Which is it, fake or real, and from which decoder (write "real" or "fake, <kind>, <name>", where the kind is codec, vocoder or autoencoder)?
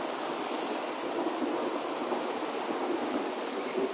real